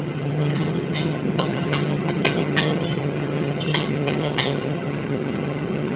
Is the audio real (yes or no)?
no